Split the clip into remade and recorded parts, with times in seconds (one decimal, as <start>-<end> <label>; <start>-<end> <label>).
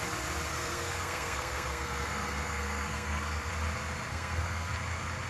0.0-0.5 recorded; 0.5-3.5 remade; 3.5-4.1 recorded; 4.1-4.7 remade; 4.7-5.3 recorded